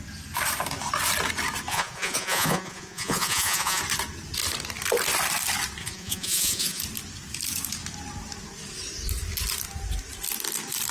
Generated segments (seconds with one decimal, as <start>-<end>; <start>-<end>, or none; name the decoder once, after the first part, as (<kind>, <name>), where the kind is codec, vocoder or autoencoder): 1.7-3.8 (vocoder, Vocos); 5.8-6.8